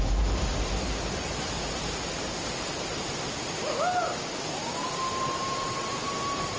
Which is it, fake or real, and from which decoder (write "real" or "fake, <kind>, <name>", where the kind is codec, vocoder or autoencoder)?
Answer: real